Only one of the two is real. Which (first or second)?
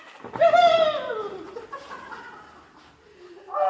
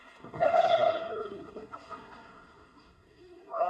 first